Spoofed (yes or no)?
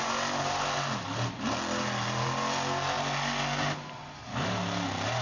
no